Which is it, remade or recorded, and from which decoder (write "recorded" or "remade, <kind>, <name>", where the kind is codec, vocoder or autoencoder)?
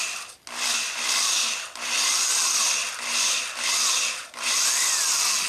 recorded